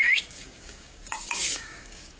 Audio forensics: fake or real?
fake